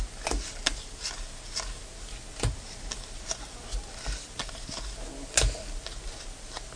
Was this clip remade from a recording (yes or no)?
no